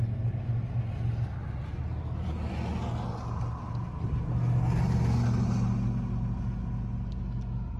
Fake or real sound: real